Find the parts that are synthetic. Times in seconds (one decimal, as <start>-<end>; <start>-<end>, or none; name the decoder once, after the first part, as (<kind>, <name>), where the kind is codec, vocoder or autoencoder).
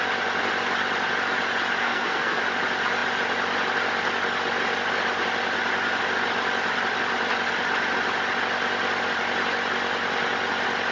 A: 1.8-2.4 (codec, SNAC)